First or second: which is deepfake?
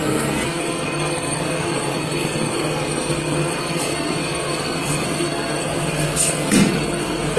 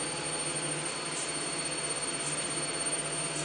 first